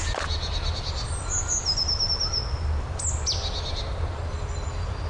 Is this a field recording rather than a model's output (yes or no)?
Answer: yes